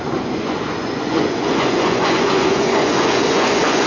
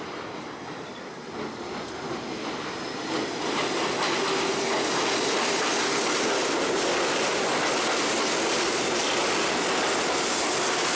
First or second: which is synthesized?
first